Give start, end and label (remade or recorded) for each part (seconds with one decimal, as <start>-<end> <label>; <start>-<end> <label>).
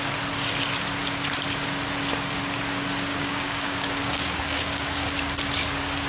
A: 0.0-3.1 recorded; 3.1-5.1 remade; 5.1-6.1 recorded